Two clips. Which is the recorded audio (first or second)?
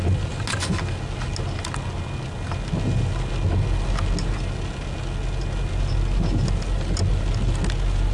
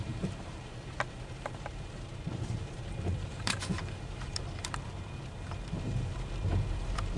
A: first